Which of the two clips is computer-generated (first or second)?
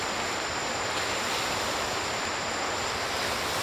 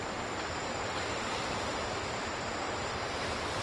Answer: second